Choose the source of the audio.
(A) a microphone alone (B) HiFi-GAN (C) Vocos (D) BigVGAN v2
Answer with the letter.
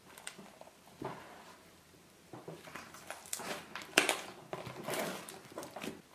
D